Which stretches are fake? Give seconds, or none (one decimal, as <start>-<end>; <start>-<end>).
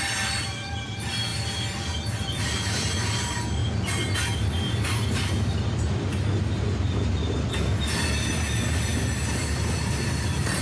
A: none